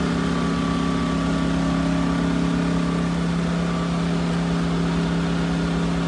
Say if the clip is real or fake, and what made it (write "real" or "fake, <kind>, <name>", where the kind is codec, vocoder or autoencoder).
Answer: real